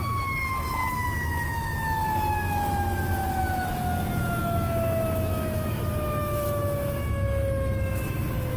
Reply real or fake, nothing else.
fake